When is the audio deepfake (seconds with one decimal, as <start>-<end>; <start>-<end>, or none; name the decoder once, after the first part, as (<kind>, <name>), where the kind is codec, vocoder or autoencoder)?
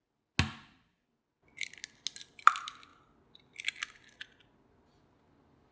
none